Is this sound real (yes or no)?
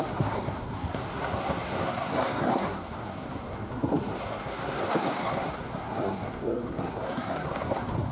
no